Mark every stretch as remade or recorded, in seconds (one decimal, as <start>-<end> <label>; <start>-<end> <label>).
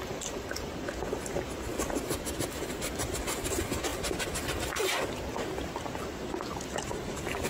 0.0-1.7 recorded; 1.7-2.8 remade; 2.8-3.9 recorded; 3.9-5.1 remade; 5.1-7.5 recorded